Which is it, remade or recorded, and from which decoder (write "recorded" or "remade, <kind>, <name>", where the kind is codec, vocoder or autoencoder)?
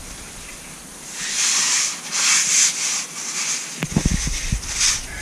recorded